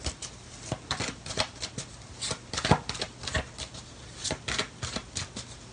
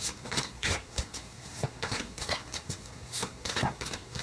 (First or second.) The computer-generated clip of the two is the second